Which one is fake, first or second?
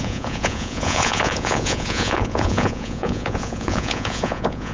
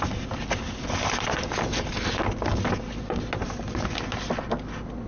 first